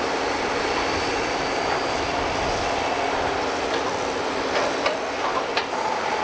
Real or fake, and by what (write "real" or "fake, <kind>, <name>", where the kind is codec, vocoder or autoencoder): real